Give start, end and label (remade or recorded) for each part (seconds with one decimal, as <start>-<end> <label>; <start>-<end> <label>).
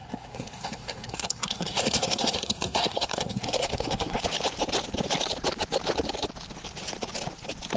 0.0-4.2 remade; 4.2-7.8 recorded